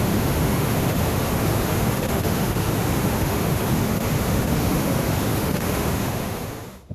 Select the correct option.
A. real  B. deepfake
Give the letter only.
B